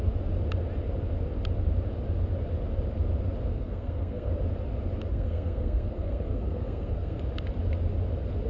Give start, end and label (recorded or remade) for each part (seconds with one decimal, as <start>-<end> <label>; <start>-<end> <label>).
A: 0.0-3.5 recorded; 3.5-4.3 remade; 4.3-5.1 recorded; 5.1-7.2 remade; 7.2-8.5 recorded